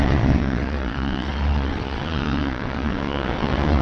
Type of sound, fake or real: fake